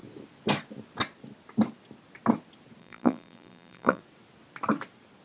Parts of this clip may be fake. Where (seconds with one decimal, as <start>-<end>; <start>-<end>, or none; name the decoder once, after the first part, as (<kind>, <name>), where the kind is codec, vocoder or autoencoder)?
2.8-4.0 (vocoder, BigVGAN v2)